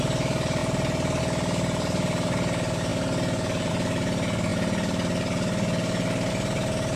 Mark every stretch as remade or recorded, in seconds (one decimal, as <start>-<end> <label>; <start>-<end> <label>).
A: 0.0-7.0 recorded